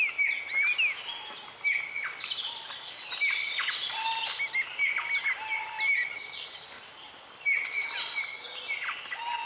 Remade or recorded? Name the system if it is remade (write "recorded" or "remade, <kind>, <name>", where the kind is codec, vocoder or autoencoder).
recorded